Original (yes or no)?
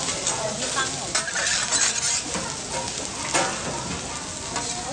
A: yes